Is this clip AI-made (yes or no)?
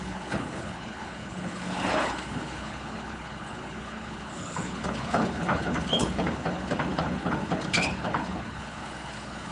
yes